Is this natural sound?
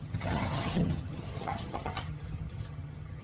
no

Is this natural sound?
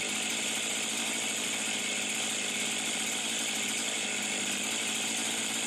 yes